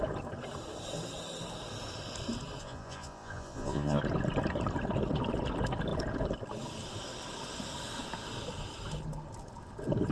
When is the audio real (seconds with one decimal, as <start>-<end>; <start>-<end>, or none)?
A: 0.0-2.6; 4.0-10.1